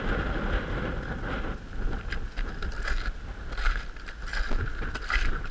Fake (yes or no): no